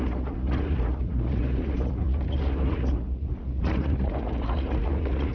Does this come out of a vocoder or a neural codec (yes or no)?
yes